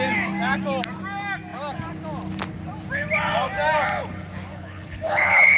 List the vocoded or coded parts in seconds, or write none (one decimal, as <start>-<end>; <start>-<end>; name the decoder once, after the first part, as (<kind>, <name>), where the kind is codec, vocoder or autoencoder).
4.5-5.6 (codec, HILCodec)